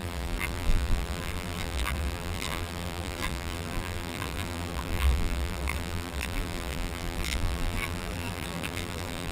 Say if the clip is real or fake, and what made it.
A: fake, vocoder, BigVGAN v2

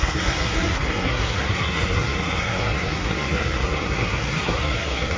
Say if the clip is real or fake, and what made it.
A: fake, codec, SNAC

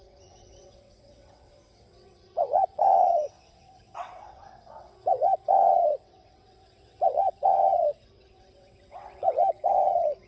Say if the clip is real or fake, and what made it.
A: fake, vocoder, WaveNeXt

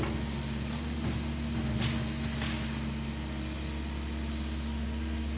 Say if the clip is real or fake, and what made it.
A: real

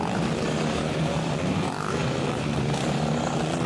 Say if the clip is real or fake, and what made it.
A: real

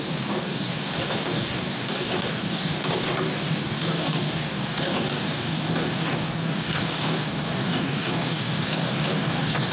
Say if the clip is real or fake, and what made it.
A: fake, codec, DAC